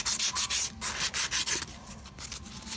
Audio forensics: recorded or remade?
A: recorded